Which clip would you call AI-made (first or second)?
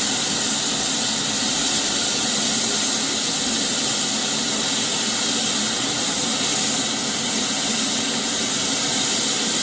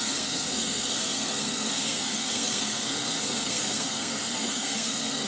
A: second